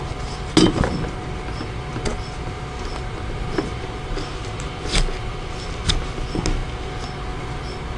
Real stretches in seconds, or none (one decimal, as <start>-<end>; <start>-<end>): 0.0-8.0